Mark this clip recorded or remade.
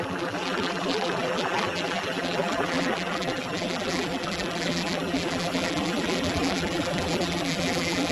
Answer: remade